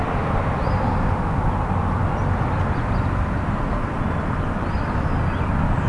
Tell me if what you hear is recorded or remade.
recorded